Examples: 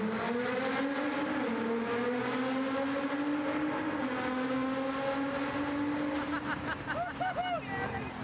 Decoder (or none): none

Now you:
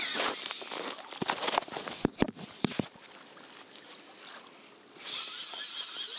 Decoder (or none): none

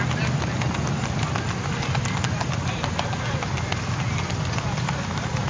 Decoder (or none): none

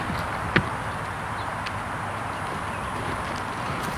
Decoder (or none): none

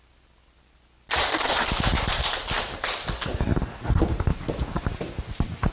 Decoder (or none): none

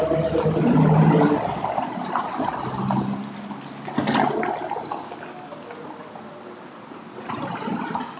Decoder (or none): none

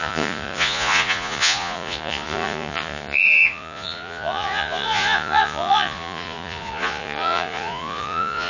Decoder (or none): vocoder, Vocos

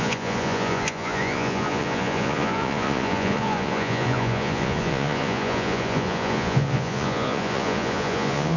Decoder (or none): vocoder, Vocos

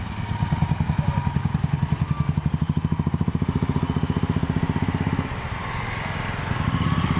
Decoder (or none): none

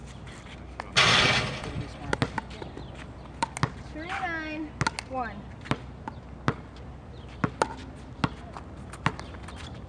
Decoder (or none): none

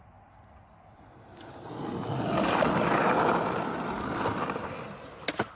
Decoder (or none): none